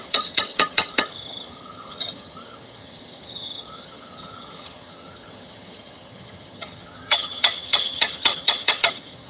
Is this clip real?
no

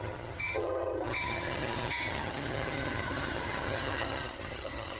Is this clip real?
no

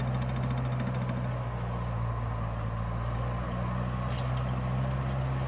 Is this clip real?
yes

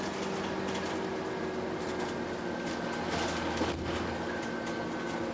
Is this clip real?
yes